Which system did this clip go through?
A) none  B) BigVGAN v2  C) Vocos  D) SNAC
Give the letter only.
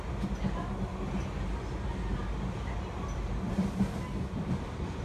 A